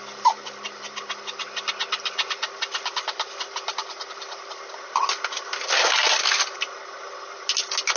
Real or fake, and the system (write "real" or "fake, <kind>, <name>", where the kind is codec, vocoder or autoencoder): real